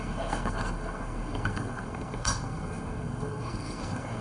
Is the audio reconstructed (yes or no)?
yes